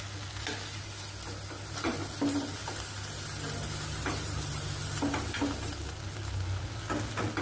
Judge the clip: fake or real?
real